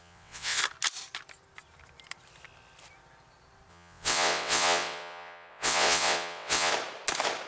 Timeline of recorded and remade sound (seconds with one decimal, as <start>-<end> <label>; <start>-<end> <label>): 0.0-0.6 remade; 0.6-3.7 recorded; 3.7-6.7 remade; 6.7-7.5 recorded